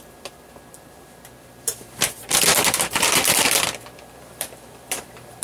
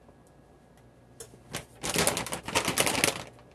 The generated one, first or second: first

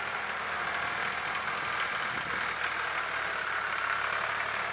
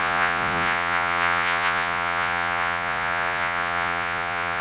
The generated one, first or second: second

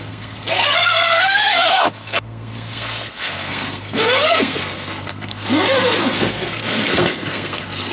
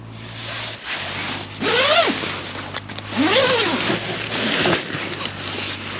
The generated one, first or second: first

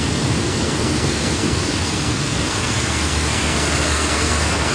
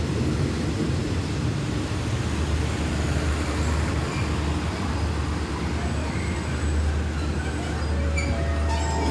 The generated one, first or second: first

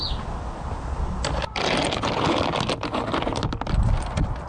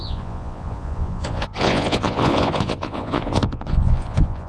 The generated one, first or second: second